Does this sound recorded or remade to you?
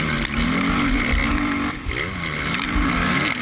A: recorded